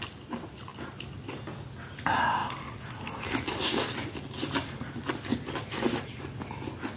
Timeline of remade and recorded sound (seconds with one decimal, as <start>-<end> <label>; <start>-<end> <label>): 0.0-2.4 recorded; 2.4-6.2 remade; 6.2-7.0 recorded